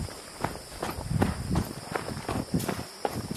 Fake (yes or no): no